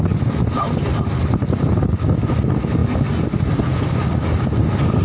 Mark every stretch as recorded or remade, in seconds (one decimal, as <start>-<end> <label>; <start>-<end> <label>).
0.0-5.0 recorded